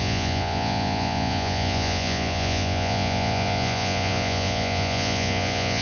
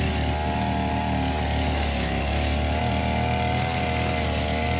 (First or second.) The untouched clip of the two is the second